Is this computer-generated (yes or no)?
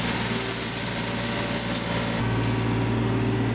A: no